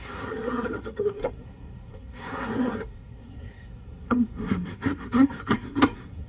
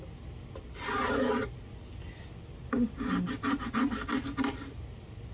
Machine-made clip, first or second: first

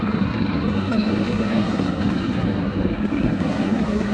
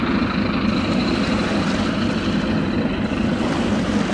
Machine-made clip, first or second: first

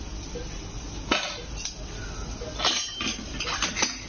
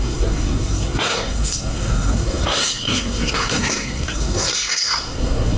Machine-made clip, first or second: second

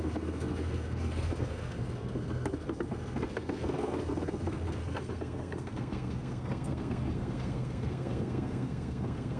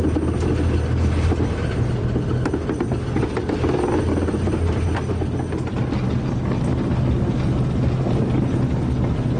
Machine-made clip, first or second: first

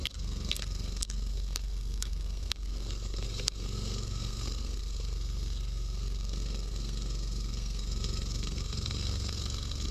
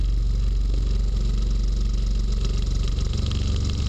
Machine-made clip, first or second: first